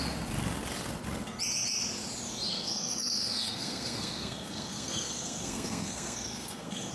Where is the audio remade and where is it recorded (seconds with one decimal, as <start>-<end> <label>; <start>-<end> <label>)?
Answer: 0.0-2.5 recorded; 2.5-6.9 remade